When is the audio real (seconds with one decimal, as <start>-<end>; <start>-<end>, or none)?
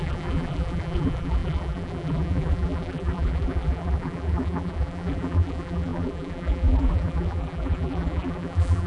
none